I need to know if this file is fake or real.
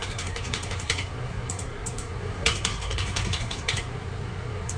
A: fake